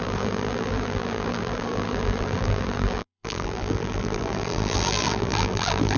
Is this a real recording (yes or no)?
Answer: no